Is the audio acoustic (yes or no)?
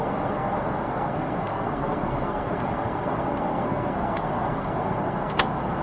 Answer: no